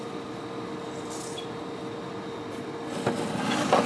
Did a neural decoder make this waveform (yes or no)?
no